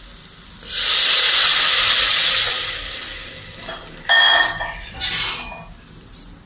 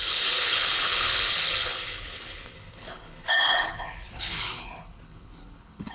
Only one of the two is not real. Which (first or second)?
second